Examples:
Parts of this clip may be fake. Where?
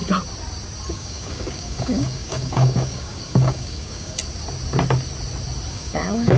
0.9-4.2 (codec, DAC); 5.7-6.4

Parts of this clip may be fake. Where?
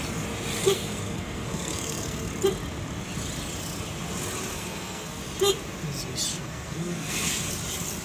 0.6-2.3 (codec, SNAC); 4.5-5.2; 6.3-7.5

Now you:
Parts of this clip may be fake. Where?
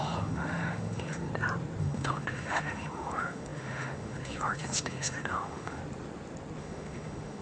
0.0-1.3 (autoencoder, DAC-VAE); 1.8-5.8; 6.6-7.4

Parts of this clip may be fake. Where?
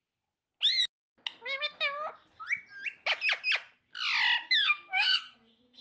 4.6-5.8 (codec, SNAC)